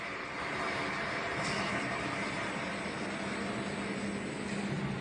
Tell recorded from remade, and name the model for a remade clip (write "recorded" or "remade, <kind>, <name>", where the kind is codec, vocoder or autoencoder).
recorded